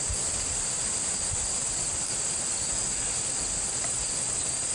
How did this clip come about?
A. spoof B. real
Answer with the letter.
B